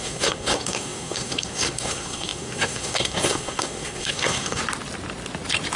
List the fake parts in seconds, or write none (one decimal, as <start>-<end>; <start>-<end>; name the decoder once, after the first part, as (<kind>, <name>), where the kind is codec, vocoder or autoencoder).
0.0-4.6 (codec, SNAC)